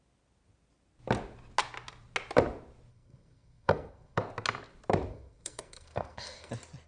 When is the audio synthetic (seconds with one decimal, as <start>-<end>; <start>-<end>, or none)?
2.9-4.2; 5.1-6.5